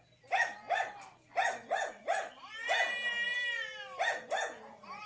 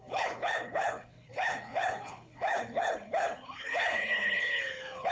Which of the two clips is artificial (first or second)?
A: second